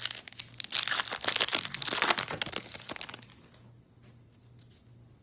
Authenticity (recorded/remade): recorded